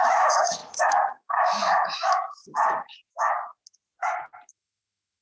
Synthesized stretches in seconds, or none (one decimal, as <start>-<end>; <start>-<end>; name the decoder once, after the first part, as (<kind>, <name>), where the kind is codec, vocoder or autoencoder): 0.0-0.6 (autoencoder, DAC-VAE); 1.1-2.4; 3.1-3.5; 4.5-5.2